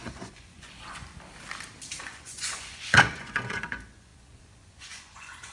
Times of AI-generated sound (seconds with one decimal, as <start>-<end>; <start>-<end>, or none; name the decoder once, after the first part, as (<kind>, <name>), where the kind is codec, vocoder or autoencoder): 0.0-1.1 (vocoder, Vocos); 2.0-5.5